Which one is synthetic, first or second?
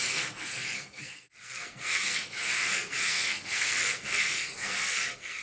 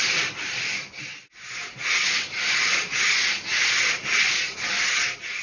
first